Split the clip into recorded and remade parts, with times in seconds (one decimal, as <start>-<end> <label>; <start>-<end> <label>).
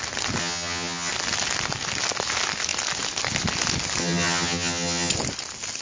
0.0-0.4 recorded; 0.4-1.1 remade; 1.1-4.0 recorded; 4.0-5.1 remade; 5.1-5.8 recorded